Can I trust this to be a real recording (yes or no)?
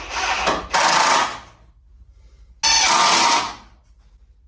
yes